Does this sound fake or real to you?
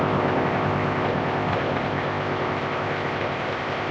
fake